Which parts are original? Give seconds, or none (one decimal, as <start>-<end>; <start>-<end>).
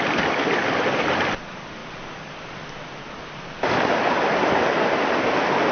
0.0-5.7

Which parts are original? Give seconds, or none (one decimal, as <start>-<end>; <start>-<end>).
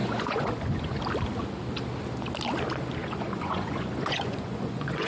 1.0-3.0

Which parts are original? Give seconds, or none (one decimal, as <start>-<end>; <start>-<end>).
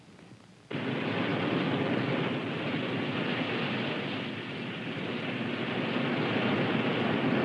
0.0-7.4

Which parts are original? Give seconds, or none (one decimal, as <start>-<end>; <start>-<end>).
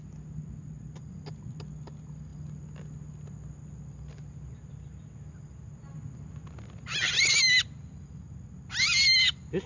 0.0-9.7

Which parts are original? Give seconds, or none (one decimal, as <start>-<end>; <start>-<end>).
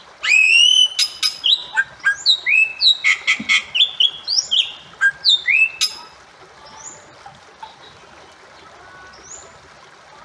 0.0-10.2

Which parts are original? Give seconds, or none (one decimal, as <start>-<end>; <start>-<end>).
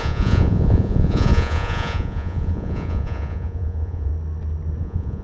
4.1-4.8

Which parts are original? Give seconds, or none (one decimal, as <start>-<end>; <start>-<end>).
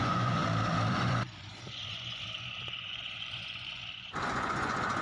0.4-0.9